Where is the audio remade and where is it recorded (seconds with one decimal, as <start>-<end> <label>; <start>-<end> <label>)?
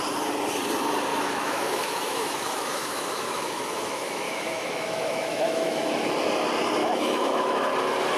0.0-1.1 recorded; 1.1-5.9 remade; 5.9-6.8 recorded; 6.8-7.7 remade; 7.7-8.2 recorded